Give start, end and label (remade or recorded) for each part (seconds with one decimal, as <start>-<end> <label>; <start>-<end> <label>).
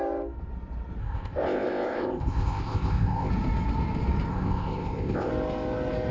0.0-1.0 recorded; 1.0-3.3 remade; 3.3-4.3 recorded; 4.3-5.3 remade; 5.3-6.1 recorded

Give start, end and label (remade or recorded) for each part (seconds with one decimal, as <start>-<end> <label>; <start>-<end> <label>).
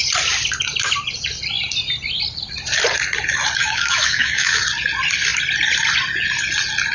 0.0-3.6 recorded; 3.6-4.6 remade; 4.6-6.9 recorded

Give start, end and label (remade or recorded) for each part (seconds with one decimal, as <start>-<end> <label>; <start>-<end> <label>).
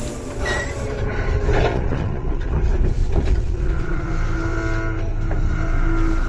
0.0-1.7 recorded; 1.7-2.6 remade; 2.6-3.0 recorded; 3.0-4.1 remade; 4.1-6.3 recorded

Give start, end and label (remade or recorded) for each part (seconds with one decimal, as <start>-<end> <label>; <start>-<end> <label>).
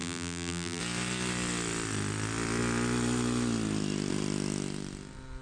0.0-0.8 remade; 0.8-5.4 recorded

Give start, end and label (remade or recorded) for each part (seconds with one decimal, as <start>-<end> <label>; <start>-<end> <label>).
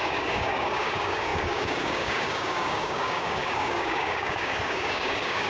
0.0-5.5 remade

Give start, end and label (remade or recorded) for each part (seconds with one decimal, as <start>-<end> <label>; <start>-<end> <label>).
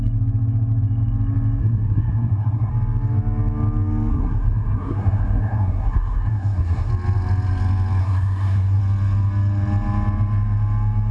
0.0-1.6 recorded; 1.6-2.7 remade; 2.7-4.1 recorded; 4.1-6.9 remade; 6.9-8.0 recorded; 8.0-8.8 remade; 8.8-11.1 recorded